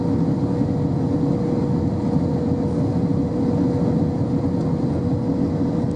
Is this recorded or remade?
recorded